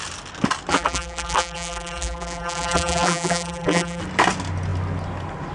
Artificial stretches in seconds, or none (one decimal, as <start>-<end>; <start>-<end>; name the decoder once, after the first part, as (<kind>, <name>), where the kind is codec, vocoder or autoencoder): 0.7-4.0 (vocoder, BigVGAN v2)